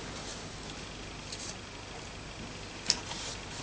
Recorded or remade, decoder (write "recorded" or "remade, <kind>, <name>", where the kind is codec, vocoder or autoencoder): recorded